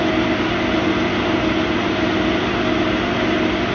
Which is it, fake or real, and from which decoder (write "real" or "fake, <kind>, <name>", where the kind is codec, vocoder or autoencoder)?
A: real